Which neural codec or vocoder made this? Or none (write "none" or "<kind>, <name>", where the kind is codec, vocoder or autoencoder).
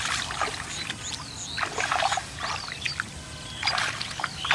none